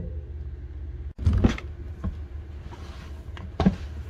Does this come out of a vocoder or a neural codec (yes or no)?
no